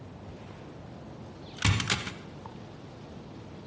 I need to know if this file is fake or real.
real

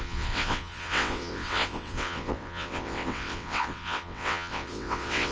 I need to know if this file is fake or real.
fake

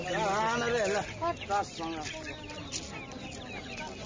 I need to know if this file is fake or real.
real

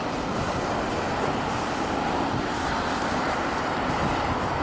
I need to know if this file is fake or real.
real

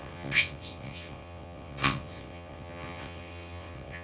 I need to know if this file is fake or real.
fake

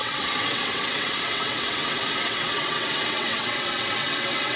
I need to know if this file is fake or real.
fake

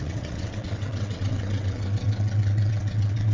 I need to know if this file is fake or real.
fake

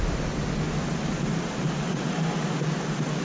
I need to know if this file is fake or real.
real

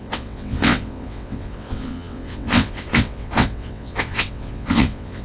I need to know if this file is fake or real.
fake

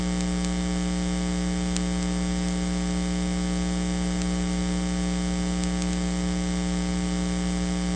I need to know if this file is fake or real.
real